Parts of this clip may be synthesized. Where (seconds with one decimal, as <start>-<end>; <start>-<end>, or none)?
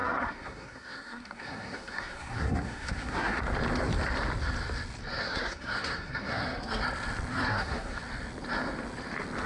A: 0.0-3.4; 5.2-6.8; 7.3-8.0